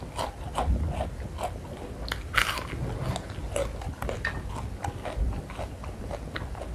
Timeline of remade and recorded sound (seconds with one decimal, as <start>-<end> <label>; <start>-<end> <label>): 0.0-6.7 recorded